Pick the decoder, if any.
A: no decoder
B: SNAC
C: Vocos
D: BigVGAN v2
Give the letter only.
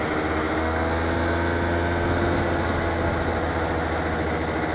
A